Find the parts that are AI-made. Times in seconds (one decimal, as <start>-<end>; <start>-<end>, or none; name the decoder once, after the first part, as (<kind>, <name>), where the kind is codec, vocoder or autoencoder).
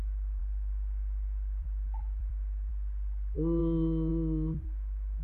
0.0-5.2 (vocoder, BigVGAN v2)